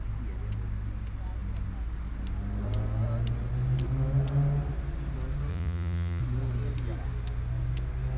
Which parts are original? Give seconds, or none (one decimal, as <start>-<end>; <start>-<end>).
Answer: 0.0-5.5; 6.2-8.2